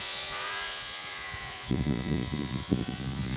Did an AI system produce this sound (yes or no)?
yes